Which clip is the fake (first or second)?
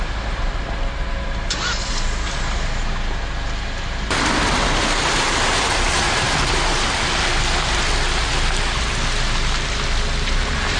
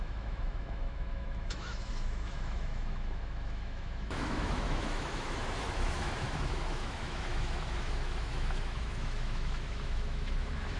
second